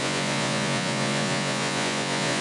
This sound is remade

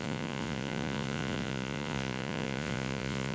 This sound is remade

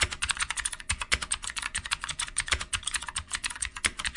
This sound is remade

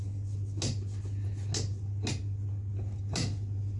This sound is recorded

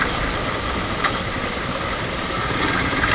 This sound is recorded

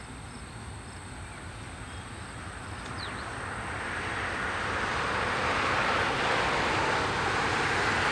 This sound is recorded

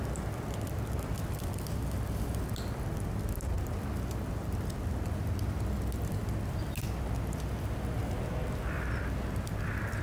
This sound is recorded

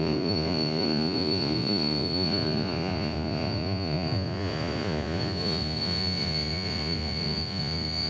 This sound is remade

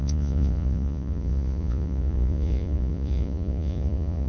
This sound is remade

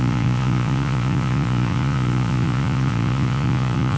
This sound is remade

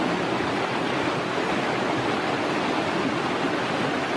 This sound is recorded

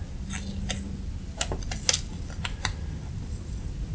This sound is recorded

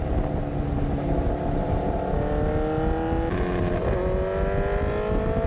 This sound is recorded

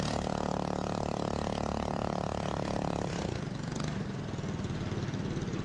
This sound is recorded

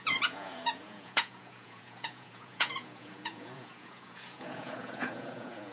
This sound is remade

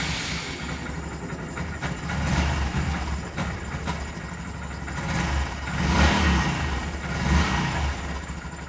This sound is recorded